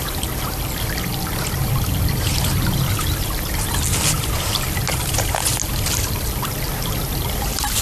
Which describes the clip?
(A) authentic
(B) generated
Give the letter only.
A